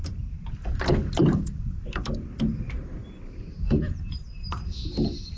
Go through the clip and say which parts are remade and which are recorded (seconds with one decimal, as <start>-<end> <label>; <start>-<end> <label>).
0.0-5.4 recorded